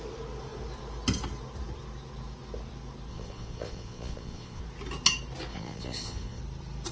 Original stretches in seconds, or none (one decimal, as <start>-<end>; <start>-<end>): 0.0-3.1; 4.6-5.5; 6.4-6.9